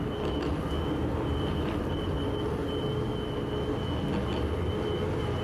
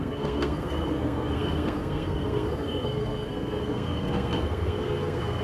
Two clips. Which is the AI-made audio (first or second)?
second